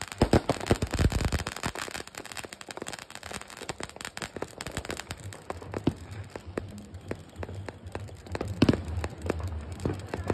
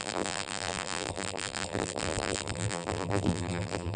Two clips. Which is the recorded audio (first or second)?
first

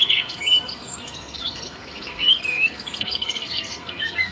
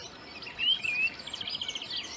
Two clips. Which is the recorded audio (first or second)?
second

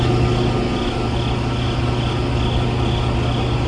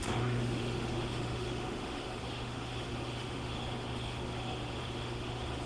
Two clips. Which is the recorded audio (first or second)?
first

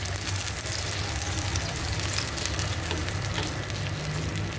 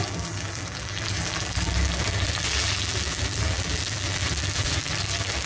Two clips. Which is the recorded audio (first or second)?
first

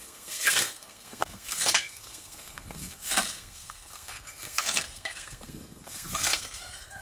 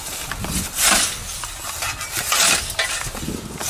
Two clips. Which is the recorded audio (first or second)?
second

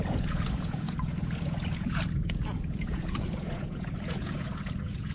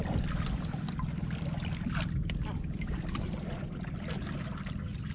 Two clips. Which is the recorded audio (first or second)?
second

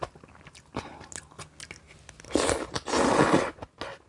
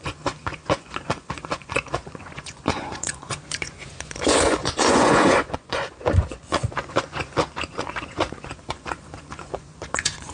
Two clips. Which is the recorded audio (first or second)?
first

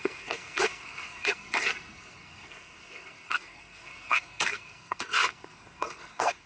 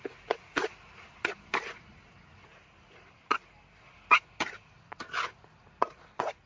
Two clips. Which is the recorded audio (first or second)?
second